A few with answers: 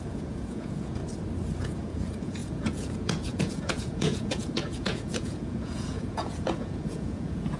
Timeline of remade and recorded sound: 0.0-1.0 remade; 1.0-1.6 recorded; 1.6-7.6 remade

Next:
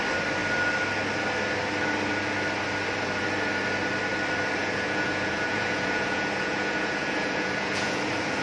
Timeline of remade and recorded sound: 0.0-4.6 recorded; 4.6-8.0 remade; 8.0-8.4 recorded

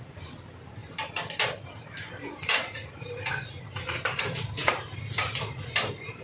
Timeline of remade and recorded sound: 0.0-6.2 remade